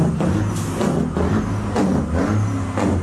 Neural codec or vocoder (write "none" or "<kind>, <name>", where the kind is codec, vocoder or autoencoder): none